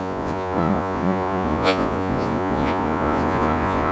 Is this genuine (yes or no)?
no